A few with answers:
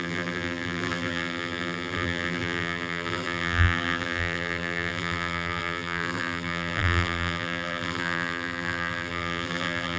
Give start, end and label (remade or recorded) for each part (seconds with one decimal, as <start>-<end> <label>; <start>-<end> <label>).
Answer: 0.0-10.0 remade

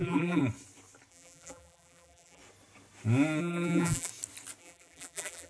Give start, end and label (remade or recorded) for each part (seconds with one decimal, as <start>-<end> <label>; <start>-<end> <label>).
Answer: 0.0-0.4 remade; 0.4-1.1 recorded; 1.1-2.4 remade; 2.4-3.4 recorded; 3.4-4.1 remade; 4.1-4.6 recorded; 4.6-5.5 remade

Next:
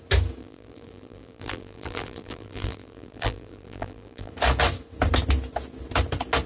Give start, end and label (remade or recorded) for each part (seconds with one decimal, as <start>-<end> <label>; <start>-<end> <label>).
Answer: 0.0-0.4 recorded; 0.4-4.3 remade; 4.3-6.5 recorded

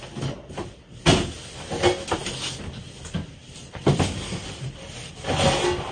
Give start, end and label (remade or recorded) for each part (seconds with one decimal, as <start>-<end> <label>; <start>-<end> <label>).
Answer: 0.0-3.4 recorded; 3.4-5.1 remade; 5.1-5.9 recorded

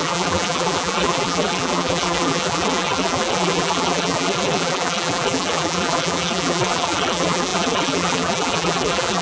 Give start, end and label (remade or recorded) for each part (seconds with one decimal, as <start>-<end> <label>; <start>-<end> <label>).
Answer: 0.0-9.2 remade

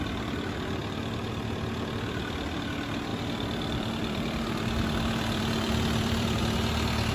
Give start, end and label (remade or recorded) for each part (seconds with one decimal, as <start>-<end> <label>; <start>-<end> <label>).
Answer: 0.0-0.8 recorded; 0.8-1.3 remade; 1.3-3.1 recorded; 3.1-6.4 remade; 6.4-7.1 recorded

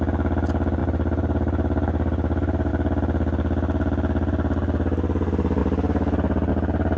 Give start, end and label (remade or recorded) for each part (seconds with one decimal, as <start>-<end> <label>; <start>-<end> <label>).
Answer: 0.0-0.8 recorded; 0.8-2.7 remade; 2.7-5.6 recorded; 5.6-6.5 remade; 6.5-7.0 recorded